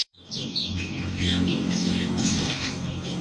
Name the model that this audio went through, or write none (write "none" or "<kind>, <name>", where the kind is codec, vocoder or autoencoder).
codec, DAC